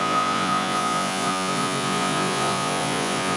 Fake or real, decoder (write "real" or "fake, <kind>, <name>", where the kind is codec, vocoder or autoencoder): fake, vocoder, Vocos